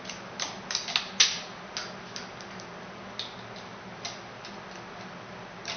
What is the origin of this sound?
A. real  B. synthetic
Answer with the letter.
A